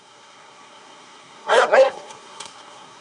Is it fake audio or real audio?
fake